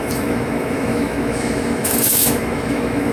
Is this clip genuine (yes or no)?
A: no